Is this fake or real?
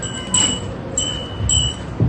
real